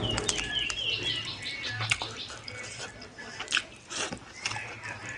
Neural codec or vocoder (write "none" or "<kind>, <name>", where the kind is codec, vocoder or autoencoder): none